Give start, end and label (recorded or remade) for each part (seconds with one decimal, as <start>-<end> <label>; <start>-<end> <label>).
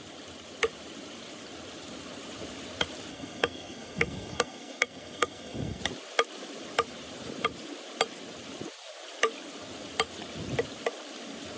0.0-3.1 recorded; 3.1-5.8 remade; 5.8-11.6 recorded